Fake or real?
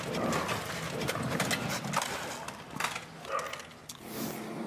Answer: real